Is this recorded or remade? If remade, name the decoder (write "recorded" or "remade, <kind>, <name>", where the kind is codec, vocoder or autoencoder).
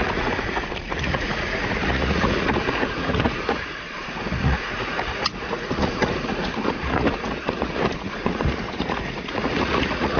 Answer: remade, vocoder, Vocos